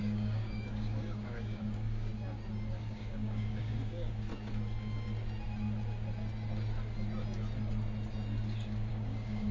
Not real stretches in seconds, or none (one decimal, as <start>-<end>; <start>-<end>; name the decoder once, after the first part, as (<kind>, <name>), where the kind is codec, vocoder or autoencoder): 0.0-2.1 (codec, DAC); 2.7-4.3; 8.9-9.5